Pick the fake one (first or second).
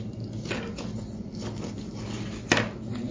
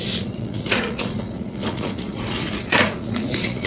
second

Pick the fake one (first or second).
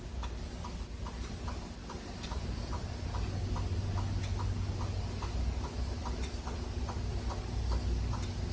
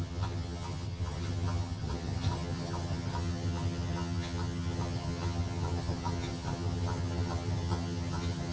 second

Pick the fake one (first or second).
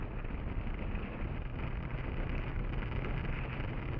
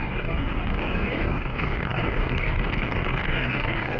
second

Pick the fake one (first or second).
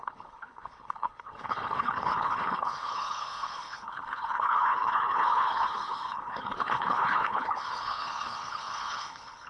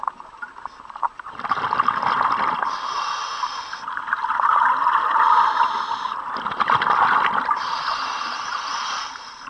first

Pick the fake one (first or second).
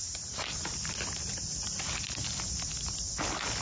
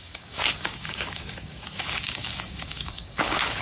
second